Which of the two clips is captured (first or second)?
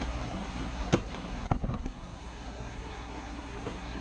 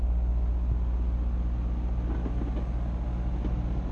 second